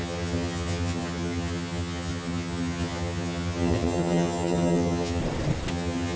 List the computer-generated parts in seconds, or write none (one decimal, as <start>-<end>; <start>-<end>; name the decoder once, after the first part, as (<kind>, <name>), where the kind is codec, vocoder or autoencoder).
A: 0.0-5.2 (vocoder, HiFi-GAN); 5.7-6.2

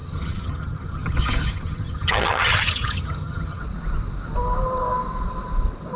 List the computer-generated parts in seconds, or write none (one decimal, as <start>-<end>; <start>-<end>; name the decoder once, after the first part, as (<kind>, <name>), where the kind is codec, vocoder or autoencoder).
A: 0.0-3.6 (vocoder, HiFi-GAN)

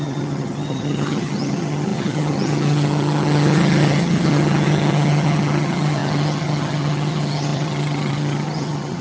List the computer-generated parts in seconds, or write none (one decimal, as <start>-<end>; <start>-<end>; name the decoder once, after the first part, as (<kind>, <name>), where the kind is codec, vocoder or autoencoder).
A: 0.0-9.0 (vocoder, HiFi-GAN)

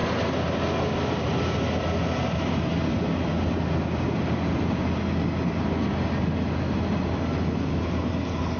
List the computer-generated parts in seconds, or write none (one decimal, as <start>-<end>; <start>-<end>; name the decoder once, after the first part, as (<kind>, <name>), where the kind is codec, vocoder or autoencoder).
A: none

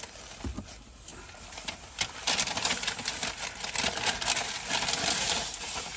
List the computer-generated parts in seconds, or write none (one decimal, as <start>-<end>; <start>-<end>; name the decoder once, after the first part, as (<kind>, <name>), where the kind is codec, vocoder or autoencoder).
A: none

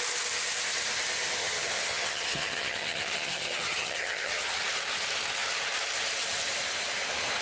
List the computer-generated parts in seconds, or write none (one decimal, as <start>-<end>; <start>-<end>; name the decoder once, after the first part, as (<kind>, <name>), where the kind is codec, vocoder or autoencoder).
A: 1.4-4.6 (vocoder, HiFi-GAN)

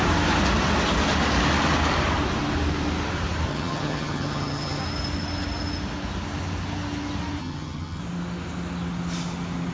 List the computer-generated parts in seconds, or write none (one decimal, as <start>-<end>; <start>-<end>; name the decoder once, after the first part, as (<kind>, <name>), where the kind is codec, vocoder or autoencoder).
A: 3.5-4.8 (vocoder, HiFi-GAN); 7.4-8.0